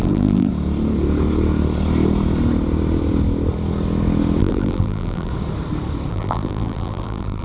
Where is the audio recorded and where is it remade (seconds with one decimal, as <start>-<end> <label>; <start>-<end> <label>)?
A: 0.0-0.5 remade; 0.5-4.4 recorded; 4.4-5.3 remade; 5.3-6.1 recorded; 6.1-7.4 remade